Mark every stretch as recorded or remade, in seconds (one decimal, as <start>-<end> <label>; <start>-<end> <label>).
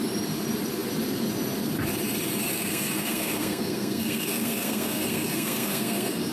0.0-2.5 recorded; 2.5-6.3 remade